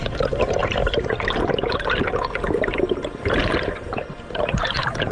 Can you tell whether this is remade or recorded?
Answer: remade